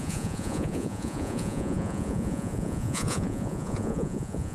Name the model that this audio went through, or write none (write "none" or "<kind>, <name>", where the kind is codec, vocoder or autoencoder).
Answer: vocoder, Vocos